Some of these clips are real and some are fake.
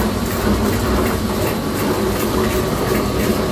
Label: real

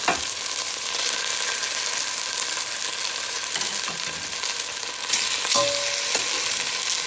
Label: real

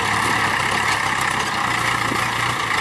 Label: real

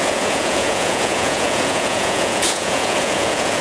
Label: fake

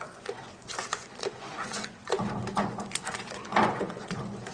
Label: fake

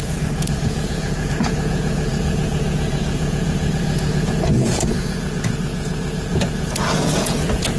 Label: fake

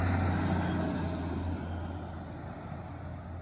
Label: real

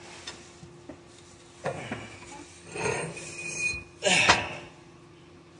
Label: real